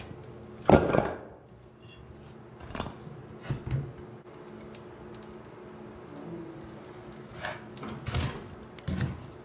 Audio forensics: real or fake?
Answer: real